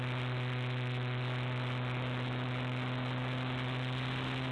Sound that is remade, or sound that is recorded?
recorded